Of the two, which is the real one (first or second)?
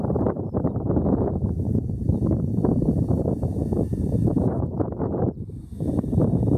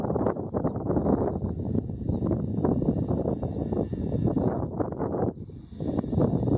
second